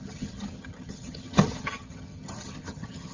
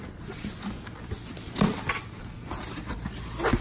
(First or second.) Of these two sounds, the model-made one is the first